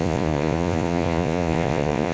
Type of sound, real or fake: fake